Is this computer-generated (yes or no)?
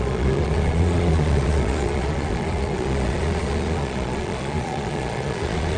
yes